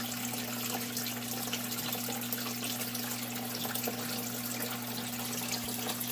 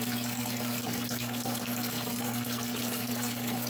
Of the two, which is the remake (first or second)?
second